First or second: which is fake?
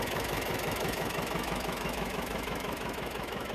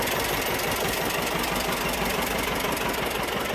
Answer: first